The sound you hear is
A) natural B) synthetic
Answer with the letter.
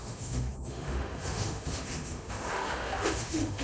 B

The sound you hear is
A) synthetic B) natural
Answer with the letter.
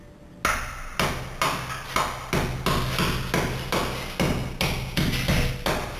B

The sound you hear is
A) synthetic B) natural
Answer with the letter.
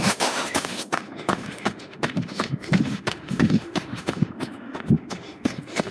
A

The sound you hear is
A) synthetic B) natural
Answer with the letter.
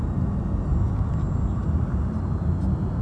B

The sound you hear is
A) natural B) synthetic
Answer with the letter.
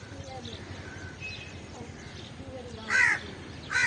A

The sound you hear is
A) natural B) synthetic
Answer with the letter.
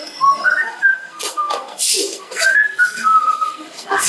B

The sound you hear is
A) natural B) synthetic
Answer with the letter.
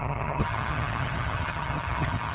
B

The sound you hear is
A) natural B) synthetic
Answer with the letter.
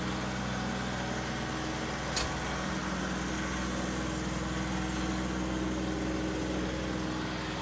A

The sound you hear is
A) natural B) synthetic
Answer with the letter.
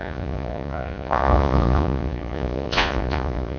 B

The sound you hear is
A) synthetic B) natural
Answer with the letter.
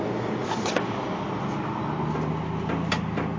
B